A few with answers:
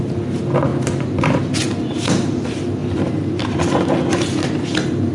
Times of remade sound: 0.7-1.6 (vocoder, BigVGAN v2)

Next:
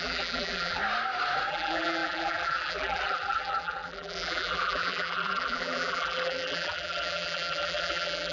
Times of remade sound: 0.0-0.8 (vocoder, BigVGAN v2); 1.5-8.3

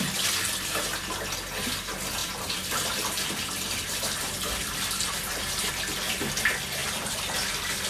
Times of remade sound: 2.2-5.7 (vocoder, BigVGAN v2); 6.8-7.5

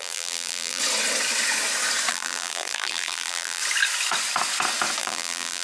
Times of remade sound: 0.0-0.8 (vocoder, BigVGAN v2); 2.1-3.6; 5.0-5.6

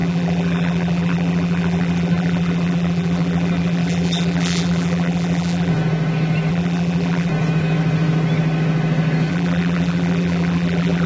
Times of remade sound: 0.0-5.7 (vocoder, BigVGAN v2); 6.5-7.3; 9.3-11.1